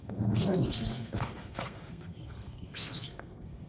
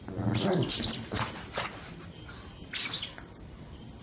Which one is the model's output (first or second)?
first